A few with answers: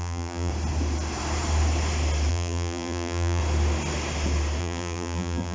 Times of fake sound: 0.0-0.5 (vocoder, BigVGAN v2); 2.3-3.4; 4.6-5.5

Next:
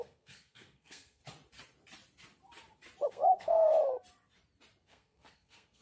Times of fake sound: 0.0-1.2 (codec, SNAC); 3.1-3.7; 4.8-5.8